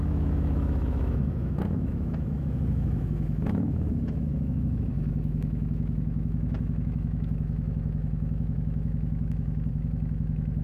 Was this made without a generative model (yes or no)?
no